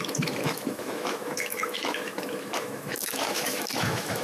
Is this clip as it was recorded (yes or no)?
no